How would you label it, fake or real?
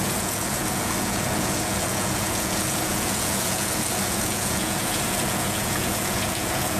fake